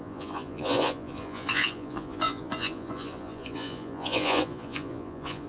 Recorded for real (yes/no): no